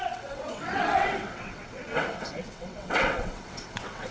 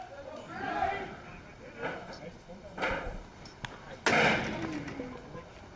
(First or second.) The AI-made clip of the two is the first